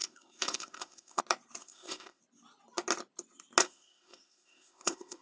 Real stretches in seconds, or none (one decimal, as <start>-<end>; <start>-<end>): 1.2-1.6; 2.2-3.6